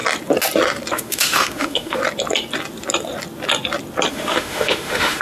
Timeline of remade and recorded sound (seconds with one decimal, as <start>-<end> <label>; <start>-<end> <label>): 0.0-0.9 recorded; 0.9-2.0 remade; 2.0-4.1 recorded; 4.1-5.2 remade